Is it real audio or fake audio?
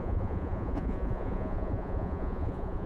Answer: fake